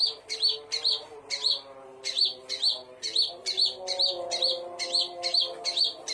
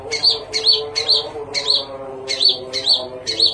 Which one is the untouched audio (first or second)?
first